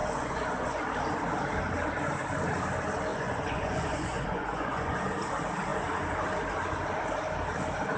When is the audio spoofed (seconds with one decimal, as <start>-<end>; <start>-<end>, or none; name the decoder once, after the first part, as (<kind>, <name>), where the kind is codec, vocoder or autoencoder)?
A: 0.0-0.8 (vocoder, Vocos); 3.1-5.0